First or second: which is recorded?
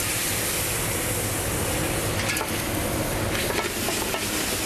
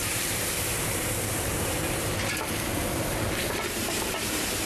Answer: first